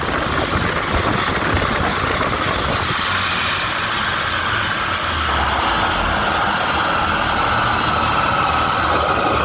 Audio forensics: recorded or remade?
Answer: recorded